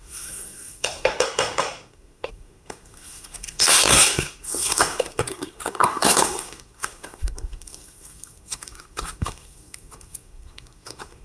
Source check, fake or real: fake